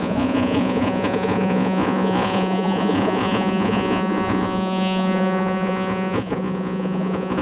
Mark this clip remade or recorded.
remade